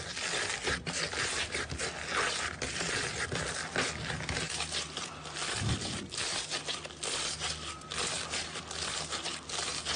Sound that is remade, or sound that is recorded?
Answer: recorded